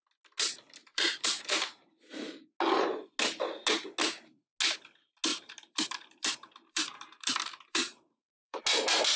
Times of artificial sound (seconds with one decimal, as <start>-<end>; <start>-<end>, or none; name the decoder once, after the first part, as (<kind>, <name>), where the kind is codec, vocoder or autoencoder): 0.8-2.3 (vocoder, BigVGAN v2); 5.3-8.6